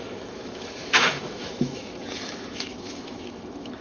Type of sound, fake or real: fake